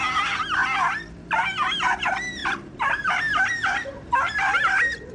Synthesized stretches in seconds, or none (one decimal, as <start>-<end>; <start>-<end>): 2.4-5.1